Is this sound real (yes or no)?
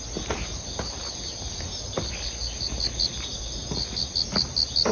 yes